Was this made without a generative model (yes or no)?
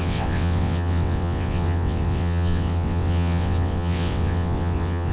no